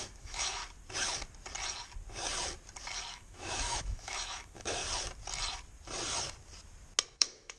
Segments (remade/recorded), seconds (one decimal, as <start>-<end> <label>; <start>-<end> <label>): 0.0-0.6 remade; 0.6-3.1 recorded; 3.1-4.8 remade; 4.8-7.1 recorded; 7.1-7.6 remade

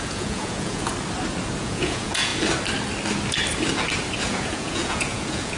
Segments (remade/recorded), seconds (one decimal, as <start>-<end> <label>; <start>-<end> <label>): 0.0-0.9 remade; 0.9-1.6 recorded; 1.6-2.3 remade; 2.3-4.2 recorded; 4.2-5.6 remade